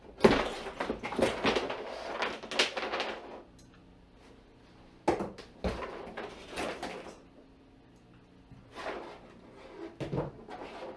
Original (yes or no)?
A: yes